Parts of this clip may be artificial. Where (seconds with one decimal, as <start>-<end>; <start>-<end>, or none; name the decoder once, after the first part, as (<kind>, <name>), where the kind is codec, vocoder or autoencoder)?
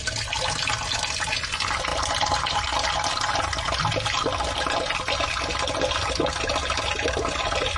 none